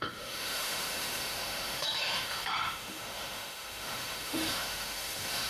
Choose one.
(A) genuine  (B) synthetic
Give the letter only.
B